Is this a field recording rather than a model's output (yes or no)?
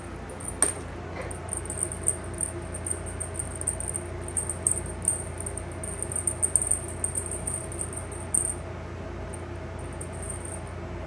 yes